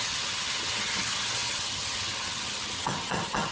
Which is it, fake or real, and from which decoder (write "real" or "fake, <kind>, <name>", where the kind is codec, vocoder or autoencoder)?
fake, vocoder, HiFi-GAN